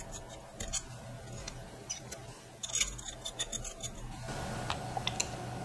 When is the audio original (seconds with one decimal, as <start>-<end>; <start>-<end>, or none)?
0.0-5.6